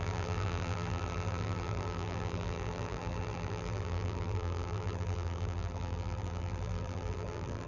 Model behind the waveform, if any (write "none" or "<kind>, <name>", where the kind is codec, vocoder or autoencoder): vocoder, BigVGAN v2